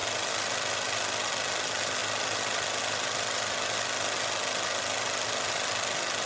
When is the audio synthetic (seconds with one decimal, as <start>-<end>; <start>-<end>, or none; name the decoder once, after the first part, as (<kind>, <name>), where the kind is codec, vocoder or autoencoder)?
none